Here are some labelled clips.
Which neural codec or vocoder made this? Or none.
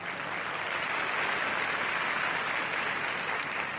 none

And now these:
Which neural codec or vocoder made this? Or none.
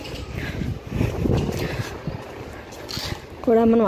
none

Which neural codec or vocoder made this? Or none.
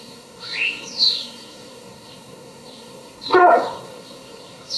codec, SNAC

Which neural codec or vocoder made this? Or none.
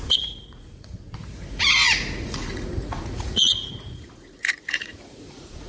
vocoder, Vocos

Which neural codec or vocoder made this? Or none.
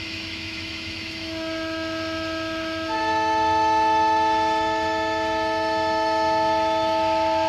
autoencoder, DAC-VAE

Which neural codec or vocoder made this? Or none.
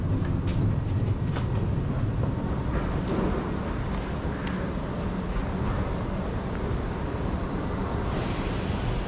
none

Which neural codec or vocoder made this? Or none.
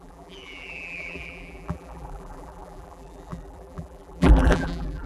vocoder, BigVGAN v2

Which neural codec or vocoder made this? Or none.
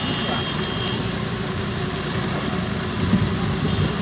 none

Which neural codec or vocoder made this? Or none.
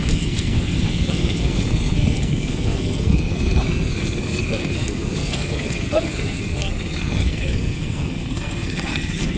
codec, SNAC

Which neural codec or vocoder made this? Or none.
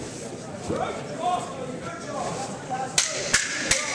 none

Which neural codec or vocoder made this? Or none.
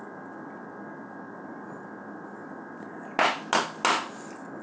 none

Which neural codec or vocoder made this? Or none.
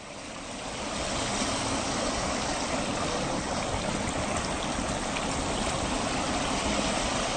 none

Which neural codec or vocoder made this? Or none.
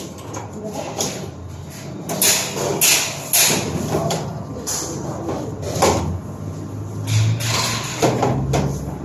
none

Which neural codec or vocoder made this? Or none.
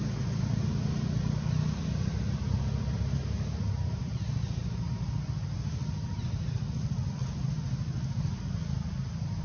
none